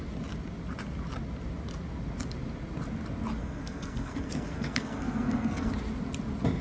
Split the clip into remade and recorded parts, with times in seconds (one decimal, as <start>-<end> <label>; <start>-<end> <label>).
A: 0.0-3.4 recorded; 3.4-5.7 remade; 5.7-6.6 recorded